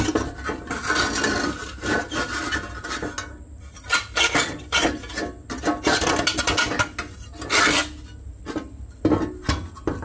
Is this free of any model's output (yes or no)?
yes